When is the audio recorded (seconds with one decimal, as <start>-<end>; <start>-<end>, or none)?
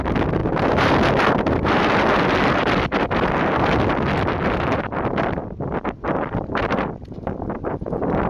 0.0-8.3